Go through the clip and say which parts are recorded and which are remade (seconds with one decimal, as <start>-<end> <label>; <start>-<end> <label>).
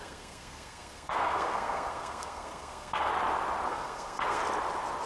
0.0-3.1 remade; 3.1-3.7 recorded; 3.7-4.4 remade; 4.4-5.1 recorded